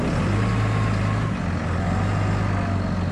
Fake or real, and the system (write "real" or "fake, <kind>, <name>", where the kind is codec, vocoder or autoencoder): real